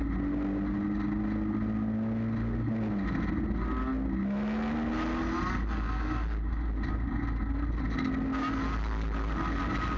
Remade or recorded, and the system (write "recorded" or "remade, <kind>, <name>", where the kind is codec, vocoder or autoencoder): recorded